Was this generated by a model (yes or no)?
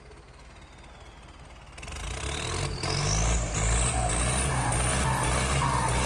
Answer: no